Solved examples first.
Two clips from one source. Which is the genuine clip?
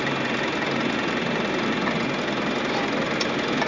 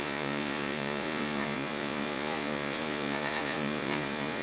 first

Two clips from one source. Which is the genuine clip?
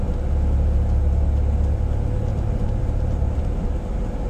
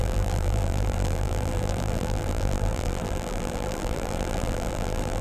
first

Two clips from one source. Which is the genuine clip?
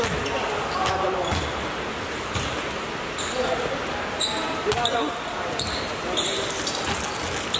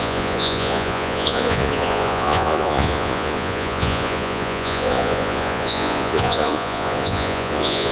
first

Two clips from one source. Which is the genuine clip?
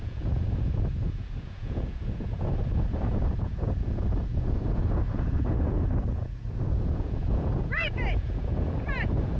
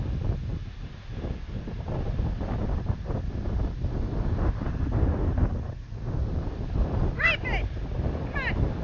second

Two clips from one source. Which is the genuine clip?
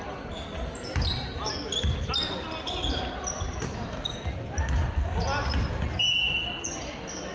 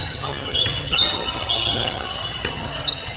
first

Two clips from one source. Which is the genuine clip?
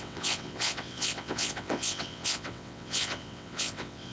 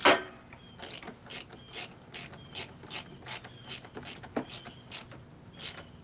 second